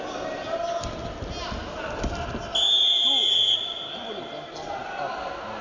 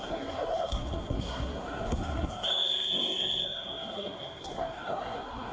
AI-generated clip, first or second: second